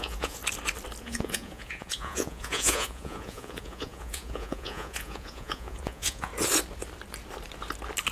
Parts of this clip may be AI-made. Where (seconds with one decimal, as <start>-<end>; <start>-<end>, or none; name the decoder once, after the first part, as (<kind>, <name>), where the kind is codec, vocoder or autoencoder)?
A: 0.0-0.4 (vocoder, Vocos); 1.0-6.3